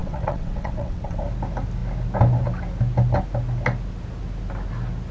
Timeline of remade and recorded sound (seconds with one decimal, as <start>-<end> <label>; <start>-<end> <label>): 0.0-1.2 remade; 1.2-5.1 recorded